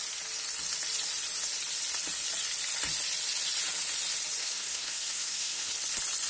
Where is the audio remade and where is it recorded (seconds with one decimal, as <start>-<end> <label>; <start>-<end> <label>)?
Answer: 0.0-4.4 recorded; 4.4-5.7 remade; 5.7-6.3 recorded